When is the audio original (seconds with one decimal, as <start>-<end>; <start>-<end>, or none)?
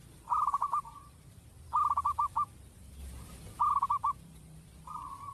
3.0-3.6